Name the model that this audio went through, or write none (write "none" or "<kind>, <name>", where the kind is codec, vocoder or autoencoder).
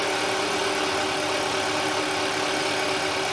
none